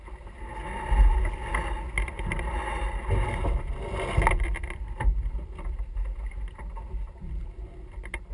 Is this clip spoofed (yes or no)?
no